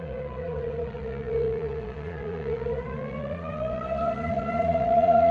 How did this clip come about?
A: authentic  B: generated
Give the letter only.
B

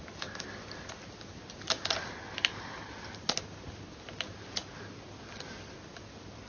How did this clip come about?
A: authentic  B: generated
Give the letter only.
A